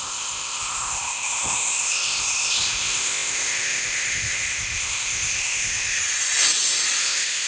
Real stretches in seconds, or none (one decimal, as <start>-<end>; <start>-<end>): 6.0-7.0